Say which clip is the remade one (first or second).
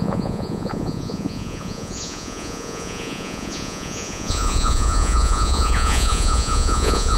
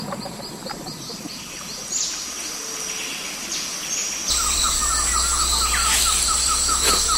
first